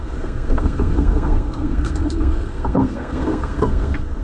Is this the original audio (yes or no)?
no